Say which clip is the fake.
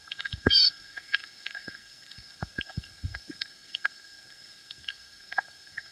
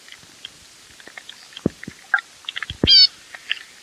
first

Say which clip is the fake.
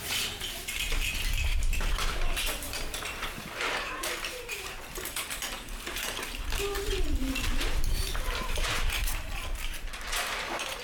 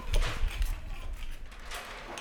first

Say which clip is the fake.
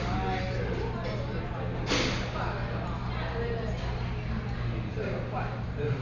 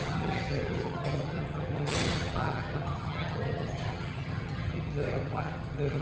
second